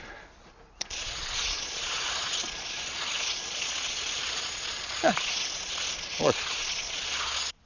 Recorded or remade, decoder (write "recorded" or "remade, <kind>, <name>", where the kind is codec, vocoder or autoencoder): remade, vocoder, Vocos